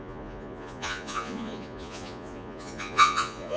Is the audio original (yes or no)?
no